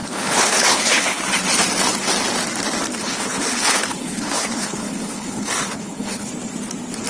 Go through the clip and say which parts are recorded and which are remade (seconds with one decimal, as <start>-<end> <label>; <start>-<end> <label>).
0.0-1.2 remade; 1.2-2.9 recorded; 2.9-6.3 remade; 6.3-7.1 recorded